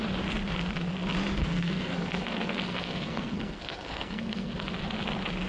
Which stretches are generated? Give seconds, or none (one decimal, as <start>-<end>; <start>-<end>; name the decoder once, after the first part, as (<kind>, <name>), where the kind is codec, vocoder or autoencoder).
1.4-4.5 (codec, SNAC)